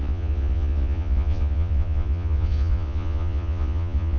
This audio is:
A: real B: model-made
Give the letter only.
B